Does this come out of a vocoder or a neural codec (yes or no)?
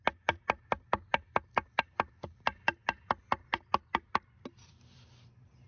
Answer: no